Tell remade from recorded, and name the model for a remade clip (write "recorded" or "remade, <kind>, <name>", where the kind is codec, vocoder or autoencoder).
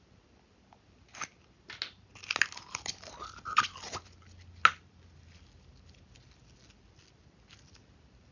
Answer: recorded